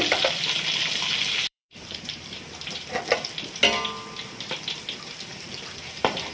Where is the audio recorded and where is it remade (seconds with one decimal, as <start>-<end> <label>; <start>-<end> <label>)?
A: 0.0-3.6 remade; 3.6-5.3 recorded; 5.3-6.3 remade